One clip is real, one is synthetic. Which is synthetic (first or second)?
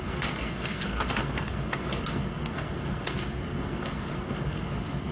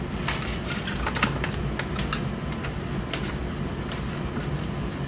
first